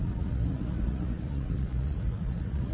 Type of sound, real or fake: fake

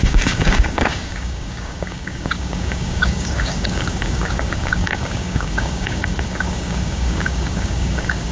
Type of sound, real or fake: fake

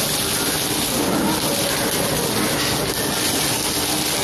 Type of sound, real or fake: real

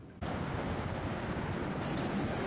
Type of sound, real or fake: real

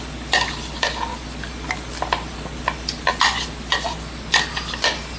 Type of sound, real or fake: real